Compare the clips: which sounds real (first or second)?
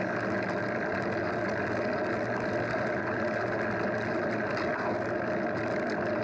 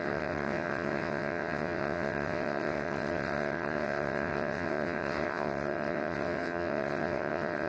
first